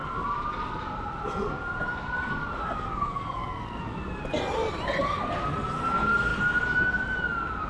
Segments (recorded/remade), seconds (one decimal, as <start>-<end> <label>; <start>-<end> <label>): 0.0-2.9 recorded; 2.9-3.8 remade; 3.8-7.7 recorded